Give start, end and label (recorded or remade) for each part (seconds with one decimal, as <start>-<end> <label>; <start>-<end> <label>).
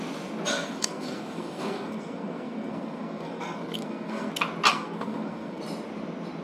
0.0-0.5 recorded; 0.5-4.3 remade; 4.3-4.7 recorded; 4.7-5.6 remade; 5.6-6.4 recorded